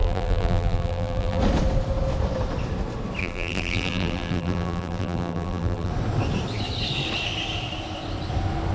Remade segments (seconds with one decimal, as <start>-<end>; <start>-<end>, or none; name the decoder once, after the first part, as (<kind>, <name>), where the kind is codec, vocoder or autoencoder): 0.0-1.4 (vocoder, BigVGAN v2); 3.2-5.9